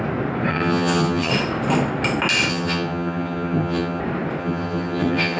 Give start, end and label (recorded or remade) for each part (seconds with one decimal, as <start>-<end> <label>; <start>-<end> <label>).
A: 0.0-0.5 recorded; 0.5-1.3 remade; 1.3-2.5 recorded; 2.5-4.0 remade; 4.0-4.4 recorded; 4.4-5.4 remade